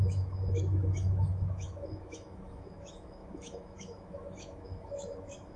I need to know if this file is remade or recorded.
remade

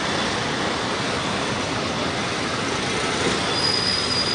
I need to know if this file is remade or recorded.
recorded